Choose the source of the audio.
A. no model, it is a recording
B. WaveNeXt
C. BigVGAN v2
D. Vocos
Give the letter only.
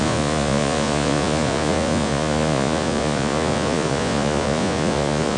D